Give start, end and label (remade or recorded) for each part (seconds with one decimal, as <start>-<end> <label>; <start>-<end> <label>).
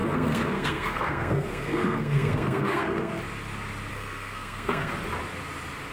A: 0.0-3.2 remade; 3.2-3.9 recorded; 3.9-4.9 remade; 4.9-5.9 recorded